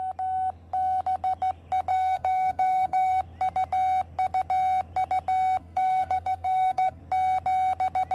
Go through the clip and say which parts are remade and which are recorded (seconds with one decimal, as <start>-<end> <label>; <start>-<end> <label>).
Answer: 0.0-1.9 recorded; 1.9-3.2 remade; 3.2-5.6 recorded; 5.6-7.0 remade; 7.0-8.1 recorded